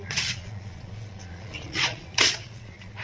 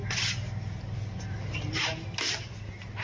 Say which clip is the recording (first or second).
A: second